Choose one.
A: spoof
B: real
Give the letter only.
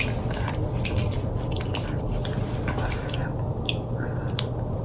B